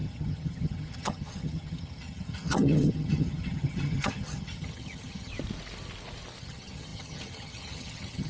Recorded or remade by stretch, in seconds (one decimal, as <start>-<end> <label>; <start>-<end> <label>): 0.0-5.3 remade; 5.3-6.4 recorded; 6.4-8.3 remade